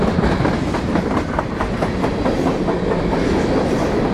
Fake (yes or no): no